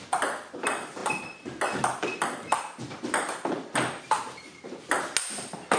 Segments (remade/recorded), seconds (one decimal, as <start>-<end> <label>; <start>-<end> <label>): 0.0-5.8 recorded